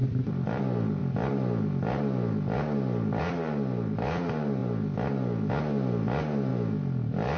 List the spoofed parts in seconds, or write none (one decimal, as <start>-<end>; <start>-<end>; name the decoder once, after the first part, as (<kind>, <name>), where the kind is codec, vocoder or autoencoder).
0.0-0.6 (vocoder, BigVGAN v2)